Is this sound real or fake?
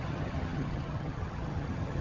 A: fake